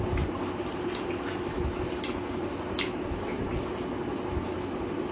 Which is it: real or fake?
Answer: real